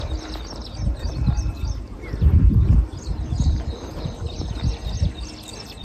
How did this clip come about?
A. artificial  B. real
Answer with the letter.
B